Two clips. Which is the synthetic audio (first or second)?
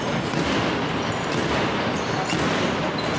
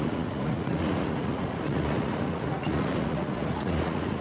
second